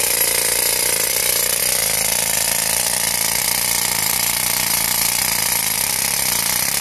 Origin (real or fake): real